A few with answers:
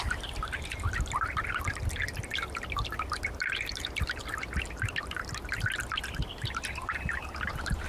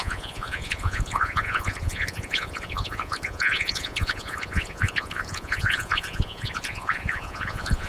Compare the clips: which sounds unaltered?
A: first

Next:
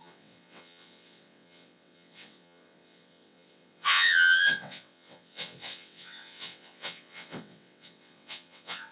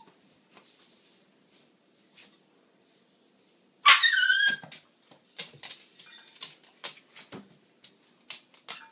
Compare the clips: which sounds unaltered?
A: second